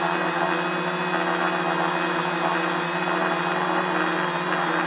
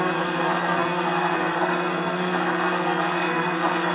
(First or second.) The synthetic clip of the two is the second